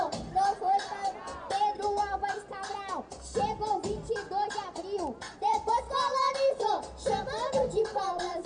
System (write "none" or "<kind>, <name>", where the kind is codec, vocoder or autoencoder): none